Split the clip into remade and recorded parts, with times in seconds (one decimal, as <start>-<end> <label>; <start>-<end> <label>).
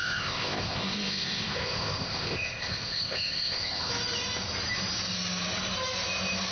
0.0-3.9 remade; 3.9-6.5 recorded